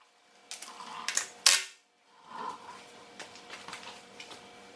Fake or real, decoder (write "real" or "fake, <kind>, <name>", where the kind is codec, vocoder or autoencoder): real